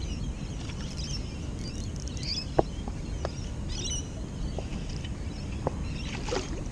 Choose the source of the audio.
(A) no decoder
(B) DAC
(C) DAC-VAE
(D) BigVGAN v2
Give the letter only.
A